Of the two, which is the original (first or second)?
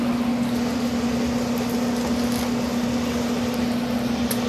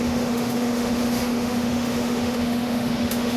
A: first